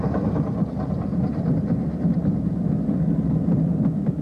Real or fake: real